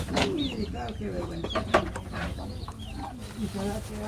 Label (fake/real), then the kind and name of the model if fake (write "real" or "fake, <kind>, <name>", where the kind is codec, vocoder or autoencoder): real